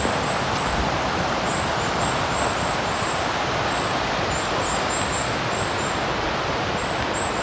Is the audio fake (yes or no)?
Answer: no